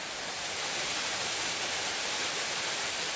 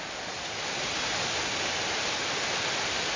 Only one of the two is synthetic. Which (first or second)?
first